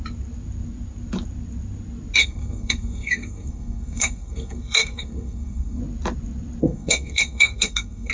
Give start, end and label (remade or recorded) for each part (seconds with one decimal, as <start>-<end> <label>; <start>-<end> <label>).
0.0-2.2 recorded; 2.2-5.8 remade; 5.8-6.6 recorded; 6.6-8.1 remade